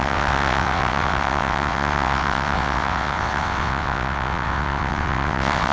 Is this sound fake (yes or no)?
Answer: yes